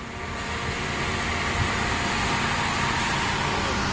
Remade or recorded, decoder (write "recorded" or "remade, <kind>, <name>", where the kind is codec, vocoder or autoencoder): recorded